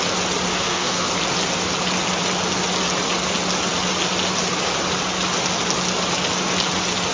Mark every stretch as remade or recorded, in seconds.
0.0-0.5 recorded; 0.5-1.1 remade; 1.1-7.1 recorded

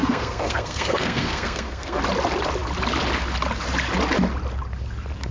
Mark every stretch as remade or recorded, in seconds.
0.0-2.0 remade; 2.0-5.3 recorded

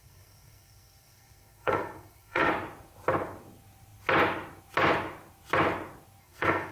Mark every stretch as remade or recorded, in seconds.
0.0-2.5 remade; 2.5-6.2 recorded; 6.2-6.7 remade

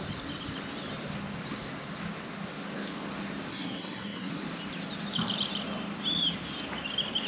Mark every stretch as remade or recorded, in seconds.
0.0-3.5 recorded; 3.5-4.3 remade; 4.3-7.3 recorded

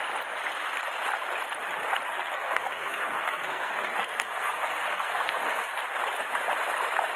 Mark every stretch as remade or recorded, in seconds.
0.0-2.1 recorded; 2.1-5.8 remade; 5.8-7.2 recorded